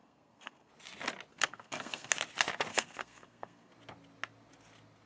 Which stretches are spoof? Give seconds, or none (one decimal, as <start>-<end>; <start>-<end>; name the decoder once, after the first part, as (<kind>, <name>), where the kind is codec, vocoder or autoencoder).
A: 0.0-0.7 (codec, SNAC); 1.3-2.1; 2.7-3.7